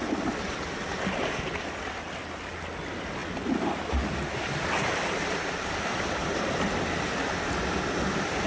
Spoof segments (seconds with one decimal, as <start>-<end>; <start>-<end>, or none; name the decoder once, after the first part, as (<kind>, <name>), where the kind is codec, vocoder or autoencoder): none